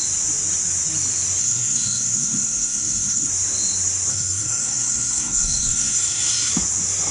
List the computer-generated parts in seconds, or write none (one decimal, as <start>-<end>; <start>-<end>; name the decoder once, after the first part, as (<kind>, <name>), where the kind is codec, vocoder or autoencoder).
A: 1.4-3.3 (codec, SNAC); 4.1-6.5